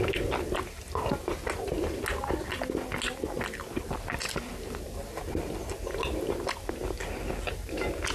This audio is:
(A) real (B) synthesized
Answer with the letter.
A